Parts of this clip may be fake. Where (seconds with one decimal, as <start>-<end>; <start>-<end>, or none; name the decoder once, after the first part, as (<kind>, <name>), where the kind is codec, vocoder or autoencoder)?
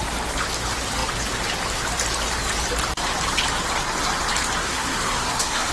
4.6-5.7 (codec, SNAC)